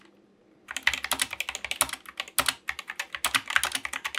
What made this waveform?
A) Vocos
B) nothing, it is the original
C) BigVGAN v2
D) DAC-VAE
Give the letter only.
B